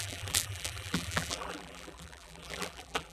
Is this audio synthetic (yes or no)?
yes